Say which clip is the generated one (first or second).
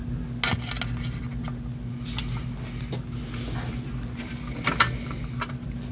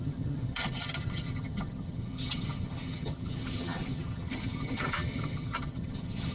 second